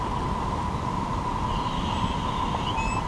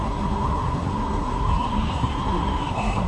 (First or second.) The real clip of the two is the first